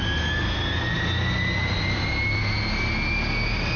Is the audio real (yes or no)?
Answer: yes